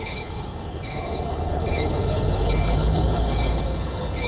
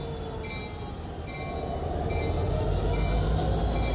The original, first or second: second